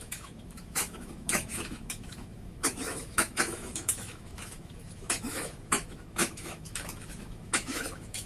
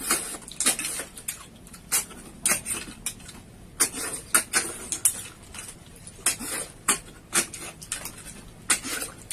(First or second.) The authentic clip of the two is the second